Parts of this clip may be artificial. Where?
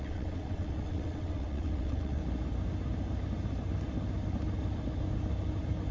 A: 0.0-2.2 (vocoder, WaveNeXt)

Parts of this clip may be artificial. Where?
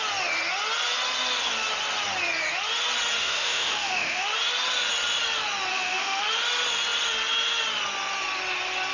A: 3.2-4.2 (autoencoder, DAC-VAE); 5.7-6.2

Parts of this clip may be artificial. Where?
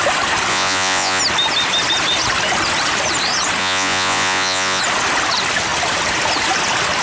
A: 0.5-1.2 (vocoder, Vocos); 3.6-4.8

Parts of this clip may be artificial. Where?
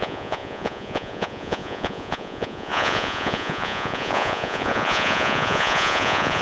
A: 0.0-6.4 (vocoder, Vocos)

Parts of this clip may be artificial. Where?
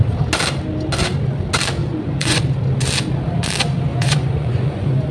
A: 1.8-2.4 (vocoder, Vocos); 3.9-5.1